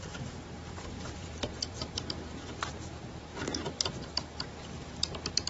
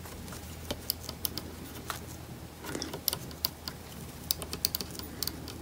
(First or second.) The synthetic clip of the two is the first